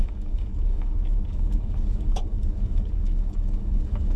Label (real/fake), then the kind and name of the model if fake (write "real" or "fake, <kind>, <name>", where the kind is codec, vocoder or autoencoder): fake, codec, DAC